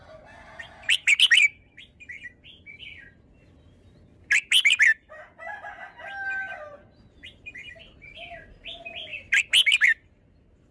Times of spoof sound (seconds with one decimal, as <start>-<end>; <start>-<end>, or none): none